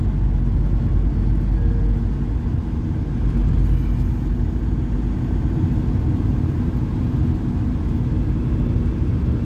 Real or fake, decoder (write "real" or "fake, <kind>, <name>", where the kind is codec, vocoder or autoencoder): real